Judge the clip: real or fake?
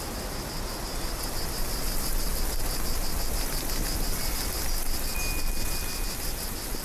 real